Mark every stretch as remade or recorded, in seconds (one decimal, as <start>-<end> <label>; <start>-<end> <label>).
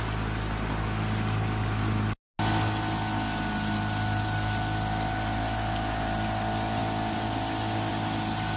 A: 0.0-8.6 recorded